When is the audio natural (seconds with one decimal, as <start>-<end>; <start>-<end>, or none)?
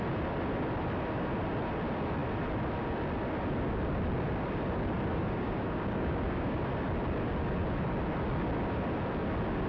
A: 0.0-5.1; 6.6-9.7